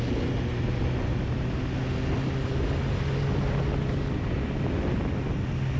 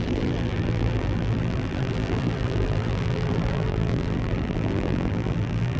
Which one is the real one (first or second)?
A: first